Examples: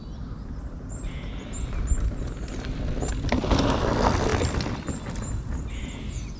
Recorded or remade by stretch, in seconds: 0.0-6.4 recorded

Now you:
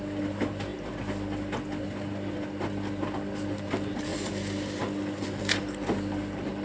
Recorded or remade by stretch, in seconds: 0.0-6.6 recorded

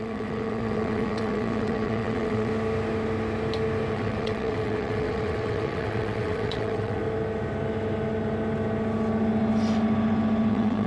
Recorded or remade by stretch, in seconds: 0.0-2.5 remade; 2.5-3.9 recorded; 3.9-7.0 remade; 7.0-10.5 recorded; 10.5-10.9 remade